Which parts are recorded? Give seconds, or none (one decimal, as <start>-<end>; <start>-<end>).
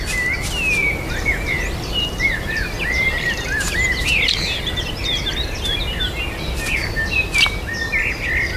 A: 0.0-0.8; 5.3-6.8; 7.4-8.6